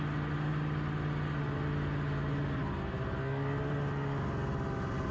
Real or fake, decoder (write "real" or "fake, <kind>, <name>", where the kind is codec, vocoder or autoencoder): real